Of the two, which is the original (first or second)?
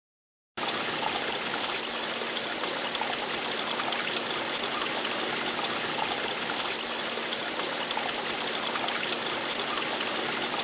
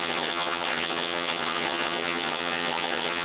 first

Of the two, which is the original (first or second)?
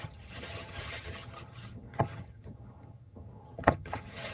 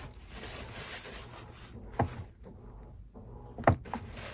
second